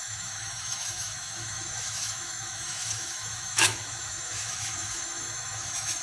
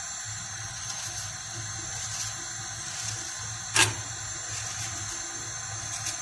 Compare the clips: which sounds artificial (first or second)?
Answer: first